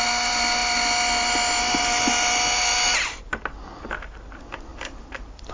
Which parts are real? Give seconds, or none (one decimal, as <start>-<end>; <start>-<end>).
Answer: 0.0-4.7